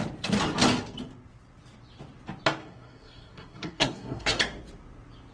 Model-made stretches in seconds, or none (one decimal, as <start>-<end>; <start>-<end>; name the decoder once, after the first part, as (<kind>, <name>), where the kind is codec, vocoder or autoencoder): 2.6-4.4 (codec, SNAC)